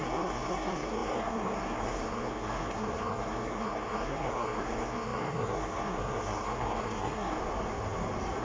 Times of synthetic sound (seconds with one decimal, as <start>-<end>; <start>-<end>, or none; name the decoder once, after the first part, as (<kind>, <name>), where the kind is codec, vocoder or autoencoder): 0.0-7.4 (codec, SNAC)